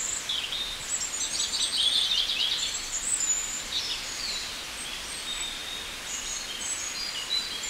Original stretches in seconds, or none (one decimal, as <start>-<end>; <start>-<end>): 5.6-6.2